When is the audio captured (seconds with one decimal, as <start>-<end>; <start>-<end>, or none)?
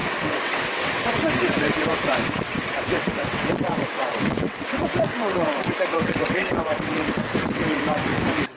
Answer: 8.1-8.6